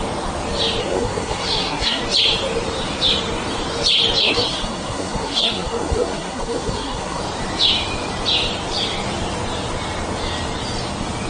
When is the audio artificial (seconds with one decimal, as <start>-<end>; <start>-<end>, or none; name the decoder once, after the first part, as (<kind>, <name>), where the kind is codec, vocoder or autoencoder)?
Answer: 0.8-2.0 (codec, SNAC); 4.2-7.2